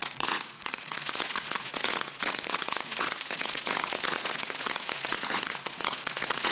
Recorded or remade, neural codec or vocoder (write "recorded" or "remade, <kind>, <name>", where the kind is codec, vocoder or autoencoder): remade, vocoder, Vocos